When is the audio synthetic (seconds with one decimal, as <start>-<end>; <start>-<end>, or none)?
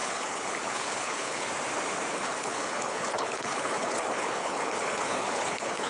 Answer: 0.0-1.5; 2.1-5.9